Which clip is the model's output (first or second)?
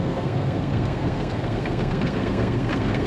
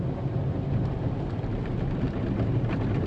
first